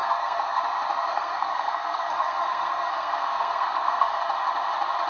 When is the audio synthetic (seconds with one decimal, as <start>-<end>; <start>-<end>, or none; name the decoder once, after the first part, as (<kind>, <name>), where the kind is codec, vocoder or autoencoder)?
0.0-0.6 (codec, SNAC); 1.1-4.2